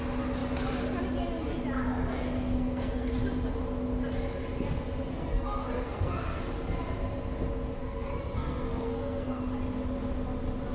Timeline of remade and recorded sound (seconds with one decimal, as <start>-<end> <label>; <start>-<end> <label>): 0.0-2.1 recorded; 2.1-3.1 remade; 3.1-5.1 recorded; 5.1-6.4 remade; 6.4-7.8 recorded; 7.8-9.4 remade; 9.4-10.7 recorded